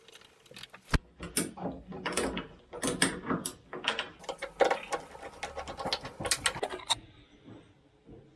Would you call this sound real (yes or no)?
yes